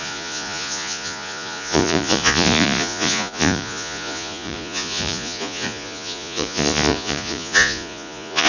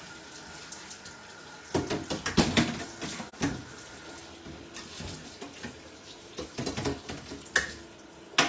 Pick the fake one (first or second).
first